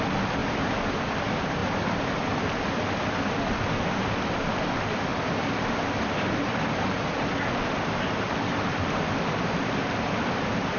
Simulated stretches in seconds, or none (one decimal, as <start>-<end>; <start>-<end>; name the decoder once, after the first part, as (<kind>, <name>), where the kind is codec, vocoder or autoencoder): 0.4-1.2 (vocoder, BigVGAN v2)